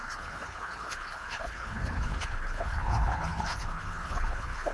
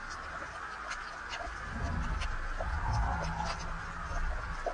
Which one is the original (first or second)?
second